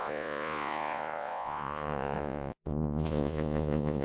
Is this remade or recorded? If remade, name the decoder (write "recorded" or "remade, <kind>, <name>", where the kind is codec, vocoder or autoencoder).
remade, vocoder, Vocos